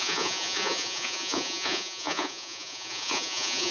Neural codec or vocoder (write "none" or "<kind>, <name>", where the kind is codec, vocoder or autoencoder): vocoder, Vocos